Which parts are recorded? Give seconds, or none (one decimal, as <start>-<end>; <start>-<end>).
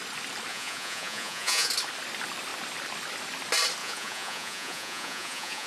0.0-0.5; 1.7-3.8